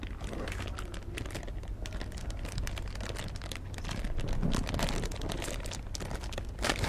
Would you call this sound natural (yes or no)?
yes